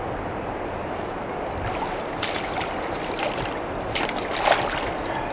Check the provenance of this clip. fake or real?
real